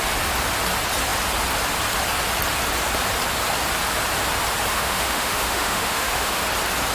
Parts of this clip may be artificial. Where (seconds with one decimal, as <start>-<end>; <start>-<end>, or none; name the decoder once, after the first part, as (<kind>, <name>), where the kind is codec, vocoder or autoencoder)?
4.7-6.4 (autoencoder, DAC-VAE)

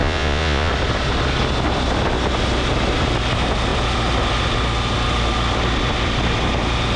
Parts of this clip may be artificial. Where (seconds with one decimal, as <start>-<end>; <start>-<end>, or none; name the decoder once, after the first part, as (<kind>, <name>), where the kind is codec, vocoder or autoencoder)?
0.0-0.7 (vocoder, Vocos)

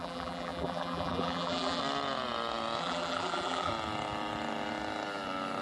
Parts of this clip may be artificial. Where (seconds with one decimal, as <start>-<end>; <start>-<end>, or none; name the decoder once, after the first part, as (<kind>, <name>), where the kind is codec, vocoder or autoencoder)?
0.0-1.8 (vocoder, BigVGAN v2); 2.8-3.7

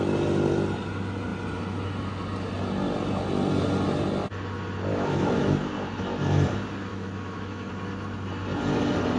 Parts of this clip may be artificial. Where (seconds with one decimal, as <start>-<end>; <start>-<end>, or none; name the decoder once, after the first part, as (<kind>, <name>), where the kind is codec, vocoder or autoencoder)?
4.9-5.7 (autoencoder, DAC-VAE); 6.9-7.7

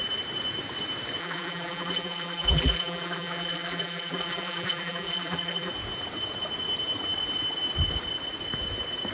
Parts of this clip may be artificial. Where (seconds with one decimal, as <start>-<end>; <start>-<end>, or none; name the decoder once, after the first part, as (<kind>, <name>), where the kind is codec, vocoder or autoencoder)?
1.2-5.7 (vocoder, BigVGAN v2)

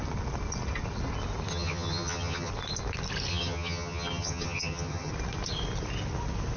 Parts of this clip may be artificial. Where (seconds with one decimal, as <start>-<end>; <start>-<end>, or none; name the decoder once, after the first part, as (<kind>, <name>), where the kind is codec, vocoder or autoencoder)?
1.5-2.5 (vocoder, HiFi-GAN); 3.3-5.1